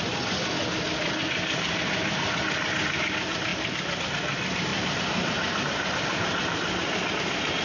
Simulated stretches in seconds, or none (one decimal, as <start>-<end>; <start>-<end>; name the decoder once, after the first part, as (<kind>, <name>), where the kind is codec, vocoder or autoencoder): 3.5-4.0 (vocoder, BigVGAN v2); 4.7-7.1